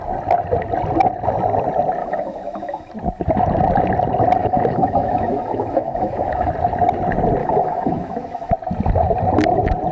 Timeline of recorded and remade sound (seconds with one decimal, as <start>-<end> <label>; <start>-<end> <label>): 0.0-2.0 recorded; 2.0-2.9 remade; 2.9-4.4 recorded; 4.4-6.5 remade; 6.5-7.4 recorded; 7.4-8.5 remade; 8.5-9.9 recorded